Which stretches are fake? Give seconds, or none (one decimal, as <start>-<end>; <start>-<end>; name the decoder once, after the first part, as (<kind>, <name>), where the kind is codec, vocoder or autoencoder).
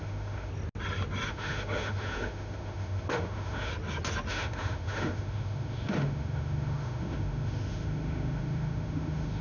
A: 0.0-0.5 (autoencoder, DAC-VAE); 1.3-3.7; 4.3-9.4